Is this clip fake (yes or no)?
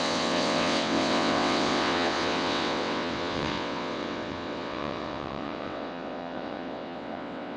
yes